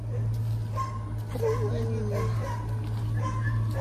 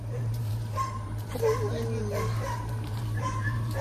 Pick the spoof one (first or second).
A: second